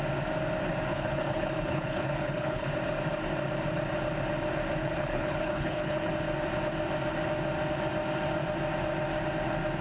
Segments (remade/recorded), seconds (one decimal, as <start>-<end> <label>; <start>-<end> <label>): 0.0-0.9 recorded; 0.9-2.7 remade; 2.7-4.8 recorded; 4.8-6.1 remade; 6.1-9.8 recorded